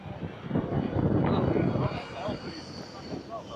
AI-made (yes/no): no